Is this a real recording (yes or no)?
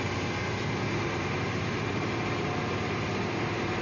yes